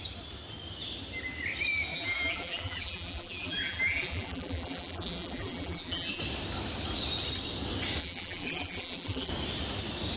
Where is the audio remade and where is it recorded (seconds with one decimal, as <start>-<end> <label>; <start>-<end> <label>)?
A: 0.0-1.9 recorded; 1.9-6.2 remade; 6.2-8.0 recorded; 8.0-9.3 remade; 9.3-10.2 recorded